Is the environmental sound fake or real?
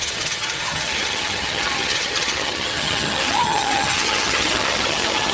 fake